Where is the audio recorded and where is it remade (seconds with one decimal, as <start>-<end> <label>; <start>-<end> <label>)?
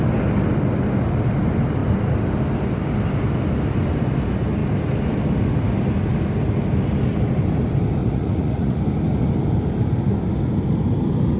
0.0-8.0 recorded; 8.0-8.8 remade; 8.8-11.4 recorded